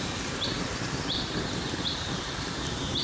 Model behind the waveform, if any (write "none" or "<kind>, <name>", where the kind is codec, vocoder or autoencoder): vocoder, BigVGAN v2